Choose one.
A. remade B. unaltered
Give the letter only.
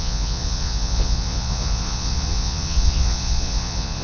A